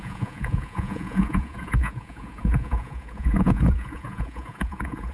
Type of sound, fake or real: fake